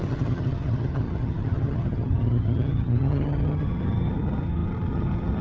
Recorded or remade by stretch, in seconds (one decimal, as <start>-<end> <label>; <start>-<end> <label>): 0.0-5.4 remade